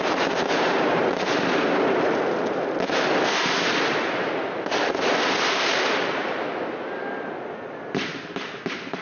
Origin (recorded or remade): remade